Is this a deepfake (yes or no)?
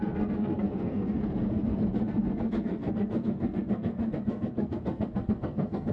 yes